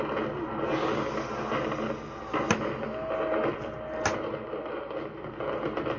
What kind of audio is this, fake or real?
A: real